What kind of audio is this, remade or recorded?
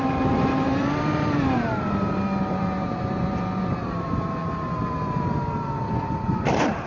remade